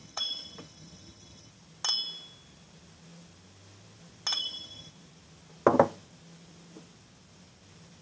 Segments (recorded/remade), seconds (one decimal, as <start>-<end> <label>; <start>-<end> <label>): 0.0-1.5 remade; 1.5-4.3 recorded; 4.3-4.9 remade; 4.9-8.0 recorded